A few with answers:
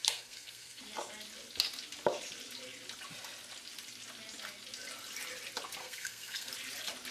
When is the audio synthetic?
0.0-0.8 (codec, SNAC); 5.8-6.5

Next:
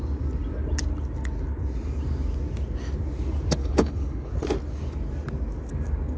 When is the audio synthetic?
3.6-4.3 (codec, HILCodec)

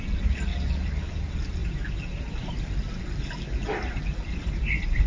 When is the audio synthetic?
3.6-5.1 (vocoder, BigVGAN v2)

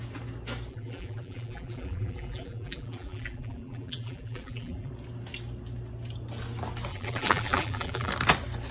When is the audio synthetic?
0.7-4.9 (vocoder, BigVGAN v2); 6.9-8.1